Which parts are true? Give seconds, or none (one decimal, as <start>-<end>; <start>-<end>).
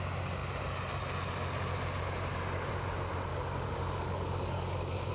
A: 0.0-3.3